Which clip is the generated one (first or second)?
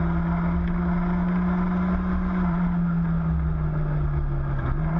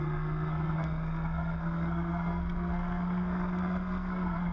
second